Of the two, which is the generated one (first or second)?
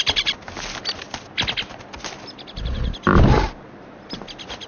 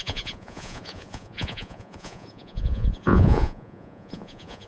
second